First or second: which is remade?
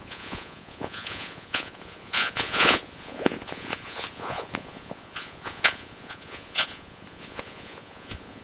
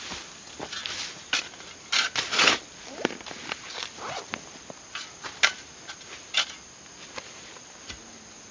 first